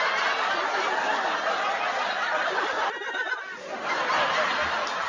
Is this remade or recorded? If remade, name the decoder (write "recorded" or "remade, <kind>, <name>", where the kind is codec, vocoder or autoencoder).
recorded